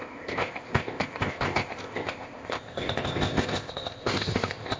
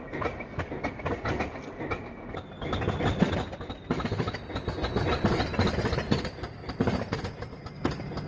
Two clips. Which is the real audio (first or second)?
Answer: second